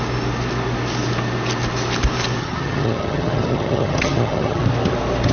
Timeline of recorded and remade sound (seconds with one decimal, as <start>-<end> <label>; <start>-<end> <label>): 0.0-2.4 recorded; 2.4-4.6 remade; 4.6-5.3 recorded